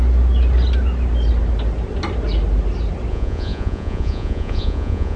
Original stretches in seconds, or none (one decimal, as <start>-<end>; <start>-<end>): 0.0-3.1